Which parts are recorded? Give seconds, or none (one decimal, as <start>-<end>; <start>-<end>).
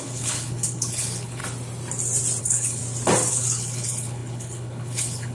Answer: 1.4-2.4; 2.8-3.3